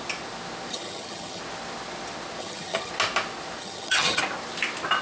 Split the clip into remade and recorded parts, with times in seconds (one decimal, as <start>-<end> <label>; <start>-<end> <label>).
0.0-0.7 recorded; 0.7-1.4 remade; 1.4-2.4 recorded; 2.4-2.9 remade; 2.9-3.6 recorded; 3.6-4.2 remade; 4.2-5.0 recorded